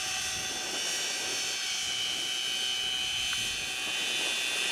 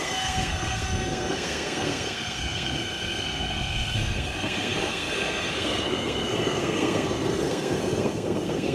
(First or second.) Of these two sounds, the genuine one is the first